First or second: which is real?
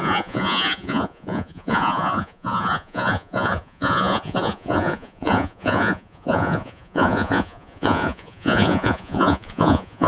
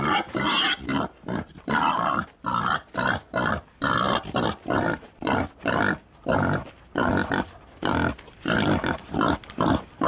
second